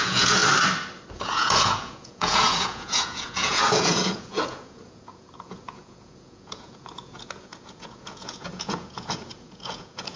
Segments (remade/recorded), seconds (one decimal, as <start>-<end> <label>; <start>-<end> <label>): 0.0-0.4 remade; 0.4-1.1 recorded; 1.1-10.2 remade